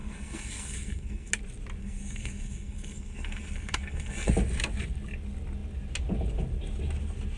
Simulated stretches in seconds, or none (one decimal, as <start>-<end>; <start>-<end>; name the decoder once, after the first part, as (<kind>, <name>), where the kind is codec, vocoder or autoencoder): 0.0-1.3 (codec, SNAC); 1.8-4.3